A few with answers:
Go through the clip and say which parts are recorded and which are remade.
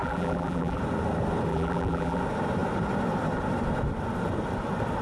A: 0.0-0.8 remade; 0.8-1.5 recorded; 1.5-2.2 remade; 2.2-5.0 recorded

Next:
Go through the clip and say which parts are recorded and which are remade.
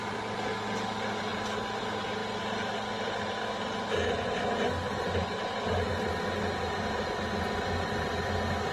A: 0.0-8.7 recorded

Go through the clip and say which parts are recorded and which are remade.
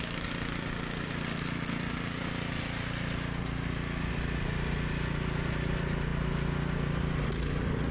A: 0.0-7.9 recorded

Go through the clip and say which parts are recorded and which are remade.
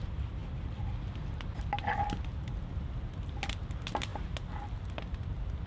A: 0.0-5.7 recorded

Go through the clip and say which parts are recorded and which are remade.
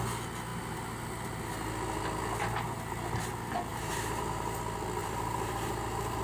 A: 0.0-3.7 recorded; 3.7-4.6 remade; 4.6-5.0 recorded; 5.0-6.2 remade